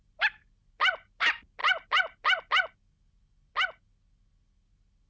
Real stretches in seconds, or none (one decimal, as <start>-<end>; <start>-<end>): 0.0-5.1